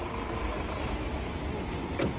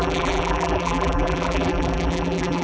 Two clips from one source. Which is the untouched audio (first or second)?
first